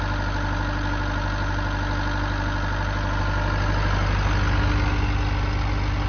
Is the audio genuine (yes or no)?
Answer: yes